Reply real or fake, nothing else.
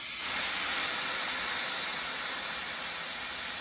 real